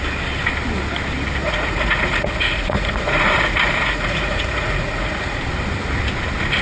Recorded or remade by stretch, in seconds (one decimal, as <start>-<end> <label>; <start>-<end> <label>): 0.0-1.4 recorded; 1.4-5.4 remade; 5.4-6.6 recorded